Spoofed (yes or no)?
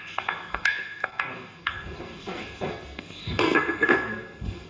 yes